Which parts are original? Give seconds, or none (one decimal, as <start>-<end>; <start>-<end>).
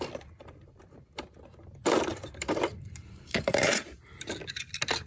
0.0-2.1; 4.0-5.1